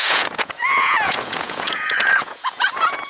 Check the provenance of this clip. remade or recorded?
remade